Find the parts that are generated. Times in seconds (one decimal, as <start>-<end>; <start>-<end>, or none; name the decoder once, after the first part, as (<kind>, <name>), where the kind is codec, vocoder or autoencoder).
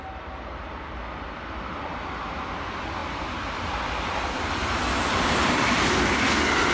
none